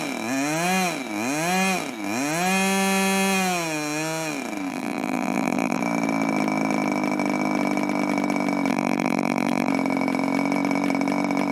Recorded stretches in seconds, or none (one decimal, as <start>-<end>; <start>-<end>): 0.0-4.7; 5.8-8.7; 9.7-11.5